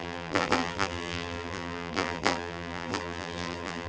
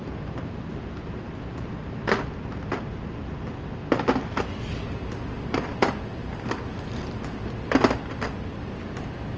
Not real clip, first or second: first